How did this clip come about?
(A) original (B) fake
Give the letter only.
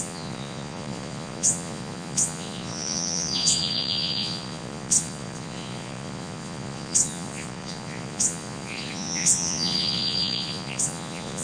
B